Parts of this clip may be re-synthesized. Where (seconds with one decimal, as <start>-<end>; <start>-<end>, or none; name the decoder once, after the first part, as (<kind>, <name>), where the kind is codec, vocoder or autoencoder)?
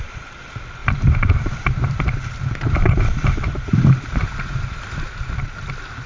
0.8-4.5 (vocoder, BigVGAN v2)